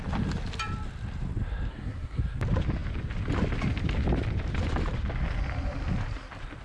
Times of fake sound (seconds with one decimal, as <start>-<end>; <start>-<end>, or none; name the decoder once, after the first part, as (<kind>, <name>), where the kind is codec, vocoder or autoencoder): 1.7-2.2 (codec, SNAC)